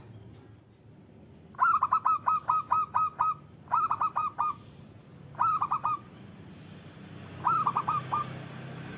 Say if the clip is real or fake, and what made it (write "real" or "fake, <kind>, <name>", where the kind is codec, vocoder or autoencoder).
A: fake, vocoder, BigVGAN v2